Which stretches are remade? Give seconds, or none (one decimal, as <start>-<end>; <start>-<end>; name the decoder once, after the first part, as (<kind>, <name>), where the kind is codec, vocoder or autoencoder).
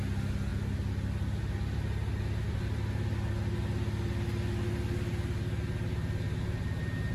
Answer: none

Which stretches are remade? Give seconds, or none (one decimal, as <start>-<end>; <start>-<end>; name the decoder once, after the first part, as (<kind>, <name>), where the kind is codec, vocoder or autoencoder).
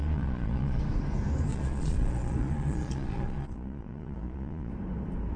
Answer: 0.0-0.8 (vocoder, Vocos); 1.5-4.7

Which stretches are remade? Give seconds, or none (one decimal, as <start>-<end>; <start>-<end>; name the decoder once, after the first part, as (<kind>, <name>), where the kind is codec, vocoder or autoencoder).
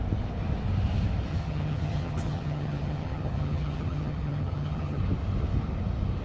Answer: 1.3-5.0 (vocoder, HiFi-GAN)